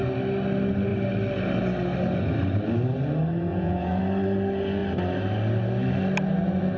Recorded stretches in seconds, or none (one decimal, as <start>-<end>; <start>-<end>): 0.0-3.5; 4.0-6.8